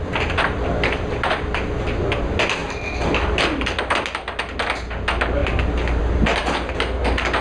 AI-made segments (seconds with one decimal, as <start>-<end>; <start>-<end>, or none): none